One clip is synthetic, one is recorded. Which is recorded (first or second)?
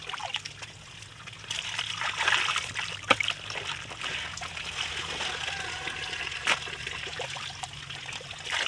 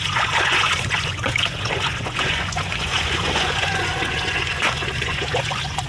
first